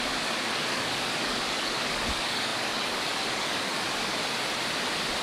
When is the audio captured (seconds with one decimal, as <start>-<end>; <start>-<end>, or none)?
4.1-5.2